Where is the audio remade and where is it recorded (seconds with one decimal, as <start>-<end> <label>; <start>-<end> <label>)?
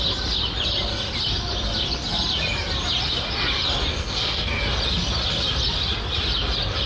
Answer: 0.0-3.9 recorded; 3.9-4.6 remade; 4.6-6.9 recorded